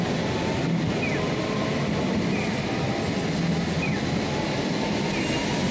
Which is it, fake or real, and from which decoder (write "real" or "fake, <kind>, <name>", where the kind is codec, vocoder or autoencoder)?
real